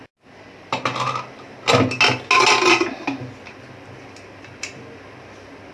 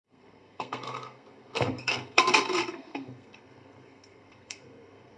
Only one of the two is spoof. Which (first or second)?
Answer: second